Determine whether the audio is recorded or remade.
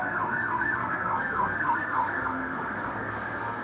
remade